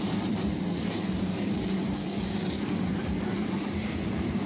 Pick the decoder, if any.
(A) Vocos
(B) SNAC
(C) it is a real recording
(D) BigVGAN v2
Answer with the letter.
D